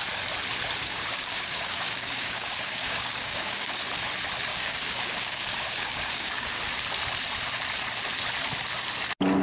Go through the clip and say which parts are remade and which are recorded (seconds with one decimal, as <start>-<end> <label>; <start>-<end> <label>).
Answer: 0.0-0.8 recorded; 0.8-3.7 remade; 3.7-4.5 recorded; 4.5-6.6 remade; 6.6-9.4 recorded